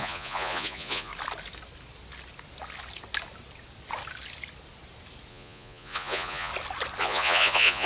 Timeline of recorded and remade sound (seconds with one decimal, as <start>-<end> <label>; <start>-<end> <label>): 0.0-1.1 remade; 1.1-5.3 recorded; 5.3-6.5 remade; 6.5-7.0 recorded; 7.0-7.9 remade